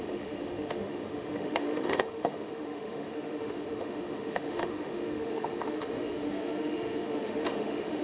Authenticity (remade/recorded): remade